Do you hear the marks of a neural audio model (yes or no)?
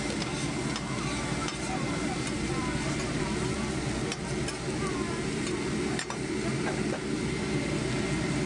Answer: no